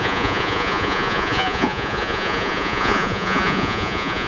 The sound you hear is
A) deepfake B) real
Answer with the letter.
A